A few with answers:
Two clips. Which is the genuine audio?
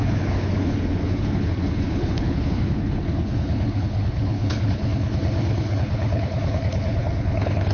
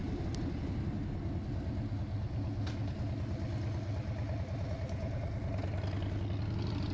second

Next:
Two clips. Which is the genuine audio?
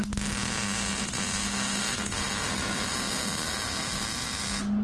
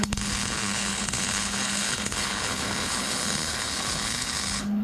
first